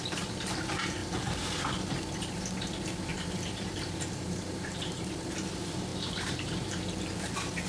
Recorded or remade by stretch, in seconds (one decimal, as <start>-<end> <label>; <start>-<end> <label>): 0.0-3.1 recorded; 3.1-5.1 remade; 5.1-5.9 recorded; 5.9-6.8 remade; 6.8-7.7 recorded